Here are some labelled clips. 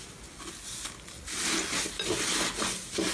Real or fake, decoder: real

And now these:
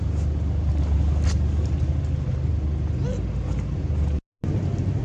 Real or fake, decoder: real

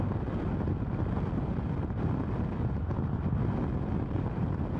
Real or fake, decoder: real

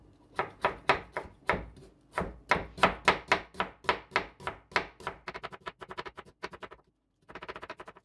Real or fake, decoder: real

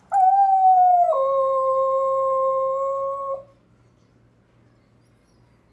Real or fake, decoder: real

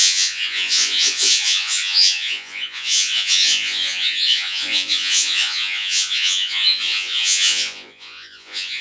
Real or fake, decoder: fake, vocoder, Vocos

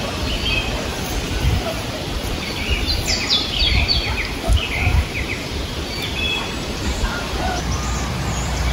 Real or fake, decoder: fake, vocoder, BigVGAN v2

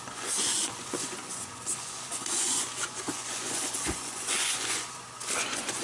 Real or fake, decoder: fake, vocoder, Vocos